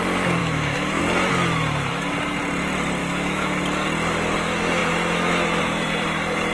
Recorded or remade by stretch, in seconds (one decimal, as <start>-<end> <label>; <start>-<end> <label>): 0.0-0.4 recorded; 0.4-1.0 remade; 1.0-3.0 recorded; 3.0-3.6 remade; 3.6-6.5 recorded